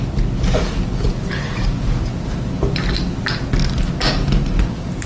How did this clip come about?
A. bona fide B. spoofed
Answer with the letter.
A